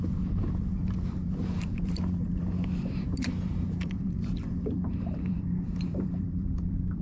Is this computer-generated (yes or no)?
yes